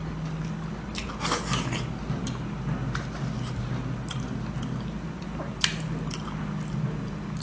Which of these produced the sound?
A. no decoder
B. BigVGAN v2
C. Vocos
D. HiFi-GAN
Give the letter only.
A